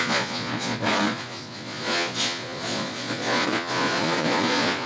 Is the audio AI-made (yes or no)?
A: yes